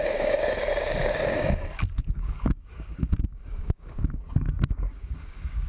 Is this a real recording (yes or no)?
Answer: no